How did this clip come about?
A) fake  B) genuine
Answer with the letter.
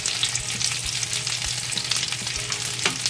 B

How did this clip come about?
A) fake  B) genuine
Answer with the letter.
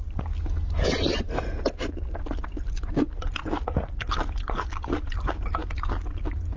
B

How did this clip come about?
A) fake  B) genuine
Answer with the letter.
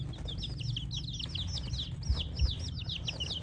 B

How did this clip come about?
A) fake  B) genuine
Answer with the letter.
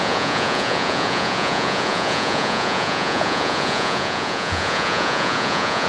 A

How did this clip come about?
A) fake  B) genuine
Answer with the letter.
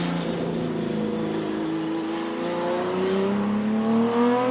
B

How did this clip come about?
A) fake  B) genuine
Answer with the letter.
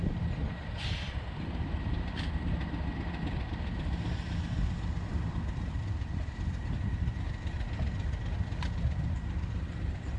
A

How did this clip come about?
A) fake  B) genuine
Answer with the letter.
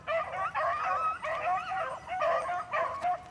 B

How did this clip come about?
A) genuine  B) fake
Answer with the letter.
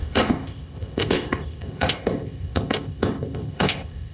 B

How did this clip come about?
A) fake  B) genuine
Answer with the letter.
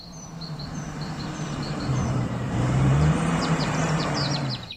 A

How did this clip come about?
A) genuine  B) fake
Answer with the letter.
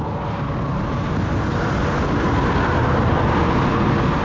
A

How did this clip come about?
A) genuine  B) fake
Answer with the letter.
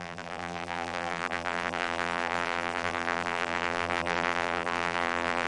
B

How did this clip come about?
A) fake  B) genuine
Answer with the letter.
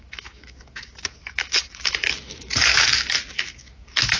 A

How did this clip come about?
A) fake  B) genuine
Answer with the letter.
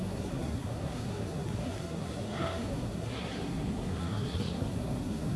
A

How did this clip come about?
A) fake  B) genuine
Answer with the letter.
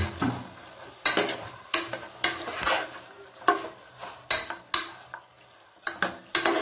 B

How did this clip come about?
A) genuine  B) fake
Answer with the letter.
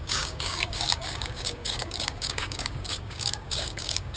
B